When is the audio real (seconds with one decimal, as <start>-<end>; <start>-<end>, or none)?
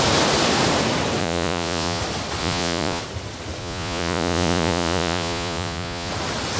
0.0-1.2; 2.0-2.4; 3.0-3.6; 6.1-6.6